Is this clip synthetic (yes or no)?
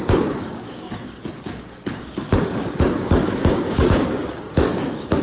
yes